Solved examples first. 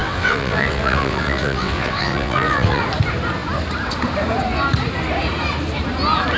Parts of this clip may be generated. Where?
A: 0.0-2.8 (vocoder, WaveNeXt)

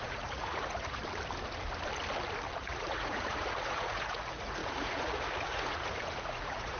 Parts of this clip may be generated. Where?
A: 0.0-1.0 (vocoder, Vocos); 2.6-6.8

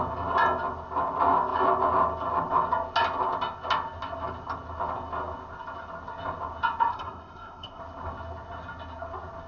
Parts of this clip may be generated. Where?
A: 6.9-7.8 (codec, SNAC)

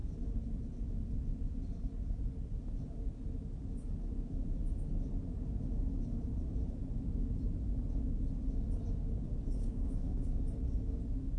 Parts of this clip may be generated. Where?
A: 9.6-10.4 (codec, SNAC)